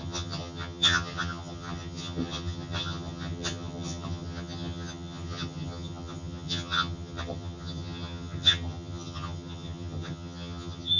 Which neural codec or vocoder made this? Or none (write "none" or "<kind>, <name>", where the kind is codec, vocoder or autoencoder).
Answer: vocoder, HiFi-GAN